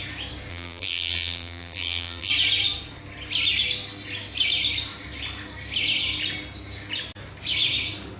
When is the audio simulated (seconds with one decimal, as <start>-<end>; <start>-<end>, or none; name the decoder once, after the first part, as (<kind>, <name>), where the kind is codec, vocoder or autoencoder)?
0.5-2.3 (vocoder, BigVGAN v2)